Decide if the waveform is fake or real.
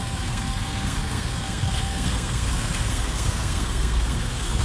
fake